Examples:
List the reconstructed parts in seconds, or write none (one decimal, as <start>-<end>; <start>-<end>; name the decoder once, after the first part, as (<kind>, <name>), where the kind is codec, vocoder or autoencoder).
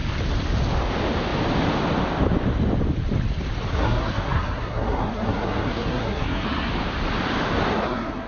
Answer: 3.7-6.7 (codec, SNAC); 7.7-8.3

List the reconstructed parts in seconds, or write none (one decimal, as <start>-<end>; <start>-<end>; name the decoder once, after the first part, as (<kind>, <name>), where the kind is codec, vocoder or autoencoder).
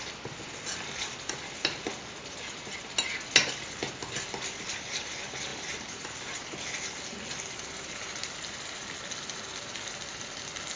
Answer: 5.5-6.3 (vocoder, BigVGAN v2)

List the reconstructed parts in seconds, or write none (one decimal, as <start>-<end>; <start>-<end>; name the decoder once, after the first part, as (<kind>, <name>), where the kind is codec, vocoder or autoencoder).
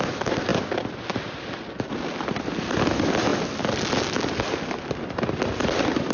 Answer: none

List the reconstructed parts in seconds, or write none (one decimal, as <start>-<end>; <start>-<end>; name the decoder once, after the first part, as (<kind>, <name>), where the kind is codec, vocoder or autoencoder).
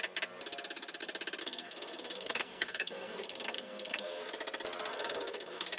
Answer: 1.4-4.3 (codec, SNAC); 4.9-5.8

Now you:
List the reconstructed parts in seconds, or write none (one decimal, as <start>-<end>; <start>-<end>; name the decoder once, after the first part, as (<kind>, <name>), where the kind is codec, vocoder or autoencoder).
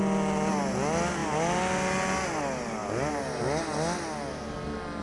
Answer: none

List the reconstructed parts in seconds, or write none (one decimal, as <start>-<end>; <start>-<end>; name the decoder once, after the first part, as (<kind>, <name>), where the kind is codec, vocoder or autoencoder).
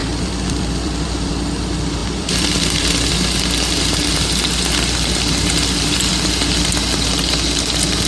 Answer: 0.0-1.3 (vocoder, BigVGAN v2); 2.0-3.1